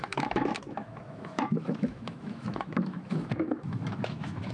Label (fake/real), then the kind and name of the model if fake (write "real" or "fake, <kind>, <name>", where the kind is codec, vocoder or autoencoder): fake, autoencoder, DAC-VAE